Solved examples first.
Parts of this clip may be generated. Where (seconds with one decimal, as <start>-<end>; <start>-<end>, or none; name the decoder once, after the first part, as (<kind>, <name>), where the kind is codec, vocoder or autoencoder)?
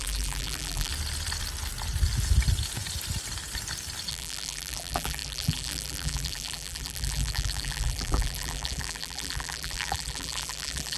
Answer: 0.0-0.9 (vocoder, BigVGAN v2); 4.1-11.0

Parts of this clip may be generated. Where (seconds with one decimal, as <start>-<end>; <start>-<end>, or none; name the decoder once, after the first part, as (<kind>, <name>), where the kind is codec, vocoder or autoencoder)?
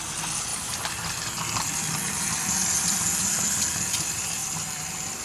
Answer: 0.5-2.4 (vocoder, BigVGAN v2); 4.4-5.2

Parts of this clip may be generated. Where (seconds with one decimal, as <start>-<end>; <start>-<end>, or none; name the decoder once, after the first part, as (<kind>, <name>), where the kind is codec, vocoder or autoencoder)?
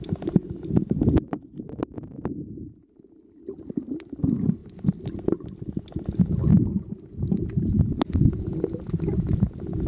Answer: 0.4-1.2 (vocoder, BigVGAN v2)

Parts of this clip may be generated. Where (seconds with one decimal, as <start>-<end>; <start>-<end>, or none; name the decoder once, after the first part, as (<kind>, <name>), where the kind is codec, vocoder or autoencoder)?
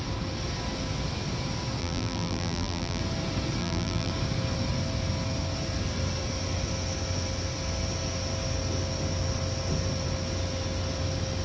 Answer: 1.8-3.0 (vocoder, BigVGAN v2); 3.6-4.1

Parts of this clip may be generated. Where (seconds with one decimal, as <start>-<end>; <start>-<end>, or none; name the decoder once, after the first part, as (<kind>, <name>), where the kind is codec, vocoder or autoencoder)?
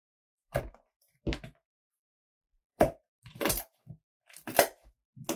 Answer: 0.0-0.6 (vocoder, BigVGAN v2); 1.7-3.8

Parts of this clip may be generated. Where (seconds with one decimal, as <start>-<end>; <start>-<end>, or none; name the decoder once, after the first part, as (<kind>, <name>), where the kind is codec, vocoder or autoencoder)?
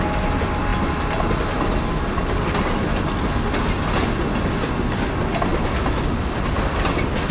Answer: none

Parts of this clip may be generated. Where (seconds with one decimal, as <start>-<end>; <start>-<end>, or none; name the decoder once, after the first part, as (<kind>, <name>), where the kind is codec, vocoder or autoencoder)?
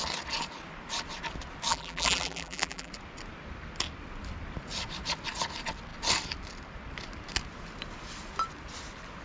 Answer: 1.7-2.9 (vocoder, BigVGAN v2)